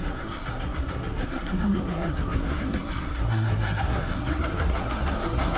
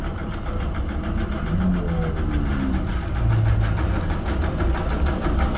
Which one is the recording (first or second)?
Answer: second